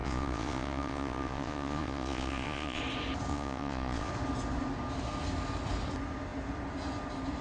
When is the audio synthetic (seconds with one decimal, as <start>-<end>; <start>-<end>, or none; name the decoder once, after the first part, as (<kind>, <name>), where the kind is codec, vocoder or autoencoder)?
0.0-2.8 (vocoder, Vocos); 3.3-4.1